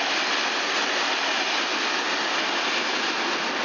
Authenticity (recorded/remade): recorded